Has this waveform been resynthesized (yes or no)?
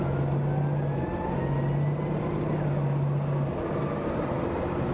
no